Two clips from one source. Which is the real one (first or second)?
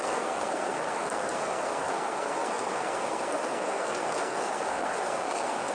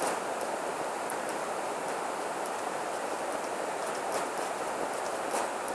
second